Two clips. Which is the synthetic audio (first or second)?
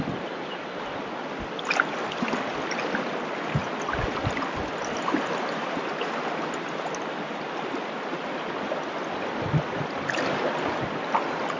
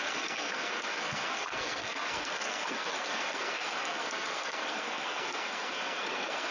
second